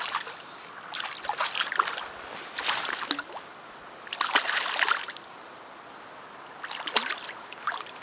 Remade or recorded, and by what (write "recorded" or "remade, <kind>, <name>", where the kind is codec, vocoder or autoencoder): recorded